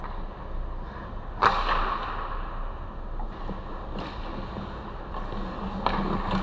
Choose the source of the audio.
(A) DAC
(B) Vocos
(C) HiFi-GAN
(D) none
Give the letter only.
D